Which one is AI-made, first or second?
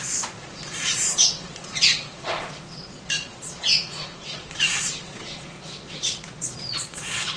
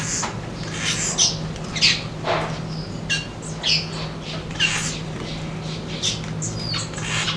first